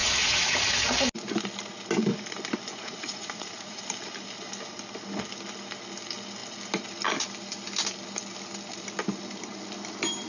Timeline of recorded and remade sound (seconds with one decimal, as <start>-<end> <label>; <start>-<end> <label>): 0.0-0.6 remade; 0.6-2.7 recorded; 2.7-3.8 remade; 3.8-10.3 recorded